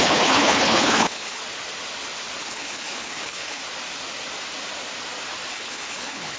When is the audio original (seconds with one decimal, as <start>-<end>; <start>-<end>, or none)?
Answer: 1.4-2.4; 3.6-5.5

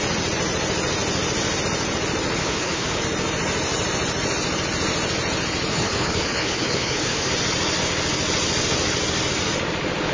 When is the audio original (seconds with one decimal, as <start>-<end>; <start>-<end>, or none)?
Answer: 0.0-2.4; 3.0-5.7; 7.3-10.1